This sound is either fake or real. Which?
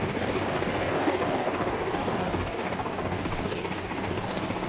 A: fake